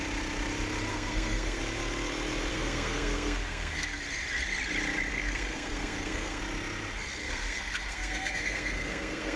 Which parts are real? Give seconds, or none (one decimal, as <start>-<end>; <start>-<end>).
0.0-0.9; 1.6-2.5; 4.0-5.1; 6.4-7.2